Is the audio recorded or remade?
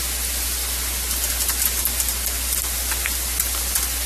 recorded